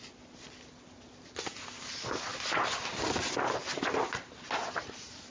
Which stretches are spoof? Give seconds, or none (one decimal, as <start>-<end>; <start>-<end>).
none